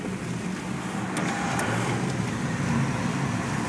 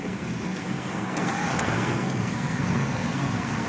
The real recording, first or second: first